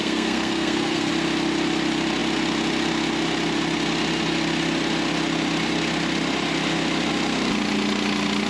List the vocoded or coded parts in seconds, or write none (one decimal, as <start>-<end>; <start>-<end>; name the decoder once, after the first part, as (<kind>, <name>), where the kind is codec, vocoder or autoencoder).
0.0-1.1 (codec, SNAC)